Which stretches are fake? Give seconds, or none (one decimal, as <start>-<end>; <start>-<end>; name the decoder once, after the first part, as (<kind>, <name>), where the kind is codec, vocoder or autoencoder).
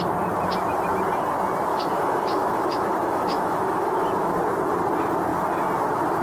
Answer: 1.7-4.3 (autoencoder, DAC-VAE)